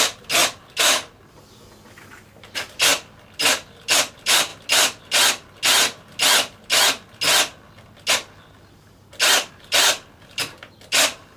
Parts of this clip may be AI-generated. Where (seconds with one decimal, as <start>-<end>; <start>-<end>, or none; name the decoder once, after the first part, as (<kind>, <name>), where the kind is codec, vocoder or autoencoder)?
0.0-0.4 (vocoder, BigVGAN v2); 1.3-4.5; 9.2-11.4